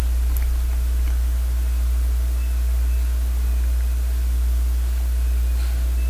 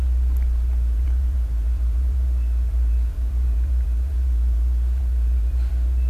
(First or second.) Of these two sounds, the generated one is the second